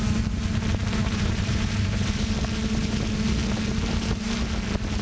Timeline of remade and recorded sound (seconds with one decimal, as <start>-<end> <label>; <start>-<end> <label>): 0.0-1.0 recorded; 1.0-2.3 remade; 2.3-5.0 recorded